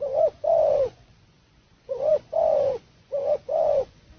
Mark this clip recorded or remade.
remade